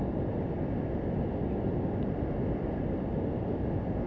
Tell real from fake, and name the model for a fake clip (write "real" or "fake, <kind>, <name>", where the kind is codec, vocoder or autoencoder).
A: real